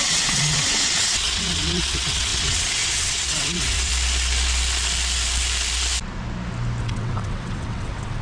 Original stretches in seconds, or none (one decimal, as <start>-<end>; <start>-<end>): 3.9-6.8